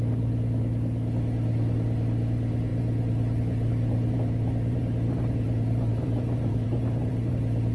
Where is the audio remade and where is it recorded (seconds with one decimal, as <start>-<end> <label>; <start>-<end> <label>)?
0.0-2.7 recorded; 2.7-7.3 remade; 7.3-7.7 recorded